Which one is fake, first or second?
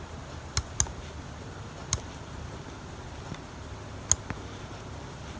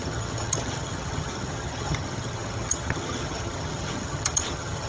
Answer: second